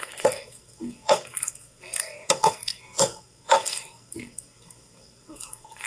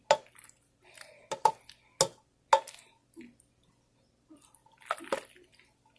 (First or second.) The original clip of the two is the second